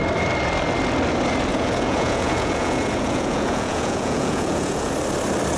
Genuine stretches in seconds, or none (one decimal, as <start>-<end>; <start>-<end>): 0.0-1.5; 4.9-5.6